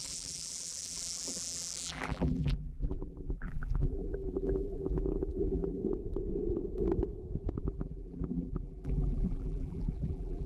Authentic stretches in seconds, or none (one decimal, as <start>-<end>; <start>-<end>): 5.8-7.6